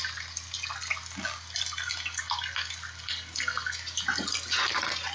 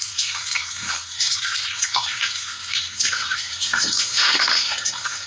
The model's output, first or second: second